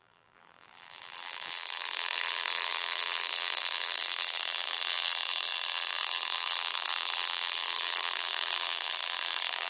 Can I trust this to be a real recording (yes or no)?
no